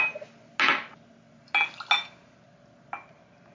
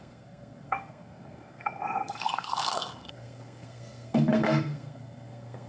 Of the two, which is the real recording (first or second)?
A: first